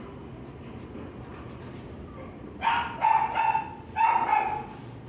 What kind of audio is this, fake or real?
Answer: real